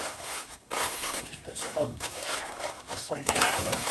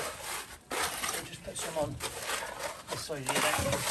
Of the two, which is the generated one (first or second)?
first